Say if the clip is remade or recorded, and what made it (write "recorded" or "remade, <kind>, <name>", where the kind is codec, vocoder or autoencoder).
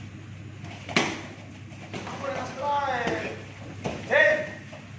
recorded